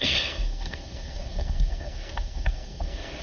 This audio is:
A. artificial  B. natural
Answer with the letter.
A